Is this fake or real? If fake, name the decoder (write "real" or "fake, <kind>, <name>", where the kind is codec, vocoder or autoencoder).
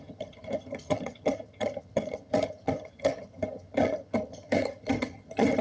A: fake, vocoder, HiFi-GAN